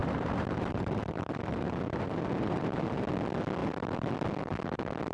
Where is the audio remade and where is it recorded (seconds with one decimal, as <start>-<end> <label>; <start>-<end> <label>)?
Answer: 0.0-3.1 remade; 3.1-3.6 recorded; 3.6-4.1 remade; 4.1-5.1 recorded